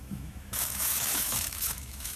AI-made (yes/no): yes